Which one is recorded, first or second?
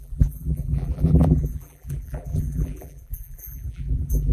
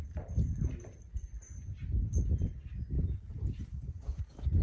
second